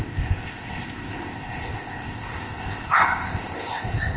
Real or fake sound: fake